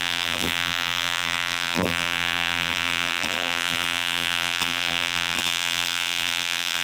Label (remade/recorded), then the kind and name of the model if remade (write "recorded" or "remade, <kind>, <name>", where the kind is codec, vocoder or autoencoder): remade, vocoder, BigVGAN v2